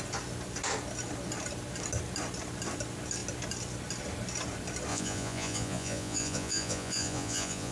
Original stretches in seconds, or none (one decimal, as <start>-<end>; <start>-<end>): 0.0-4.9